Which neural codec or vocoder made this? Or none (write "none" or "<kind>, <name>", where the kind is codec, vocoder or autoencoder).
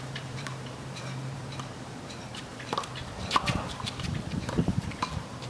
vocoder, BigVGAN v2